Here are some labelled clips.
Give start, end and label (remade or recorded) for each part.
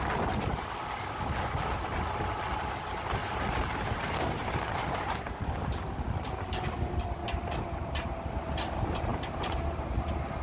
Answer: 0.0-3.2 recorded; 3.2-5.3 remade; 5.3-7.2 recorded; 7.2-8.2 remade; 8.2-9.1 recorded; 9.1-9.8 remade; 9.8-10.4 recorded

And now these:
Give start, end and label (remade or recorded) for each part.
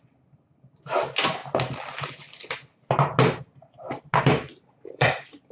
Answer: 0.0-1.4 remade; 1.4-4.2 recorded; 4.2-5.5 remade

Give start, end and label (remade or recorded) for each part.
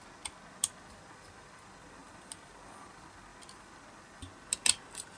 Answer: 0.0-2.0 recorded; 2.0-2.7 remade; 2.7-5.2 recorded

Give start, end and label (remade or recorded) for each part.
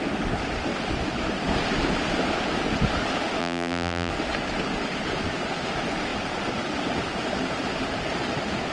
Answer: 0.0-3.4 recorded; 3.4-4.1 remade; 4.1-8.7 recorded